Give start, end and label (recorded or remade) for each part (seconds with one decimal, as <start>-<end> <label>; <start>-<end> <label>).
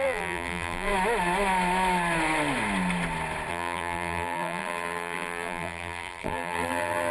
0.0-0.9 remade; 0.9-3.5 recorded; 3.5-7.1 remade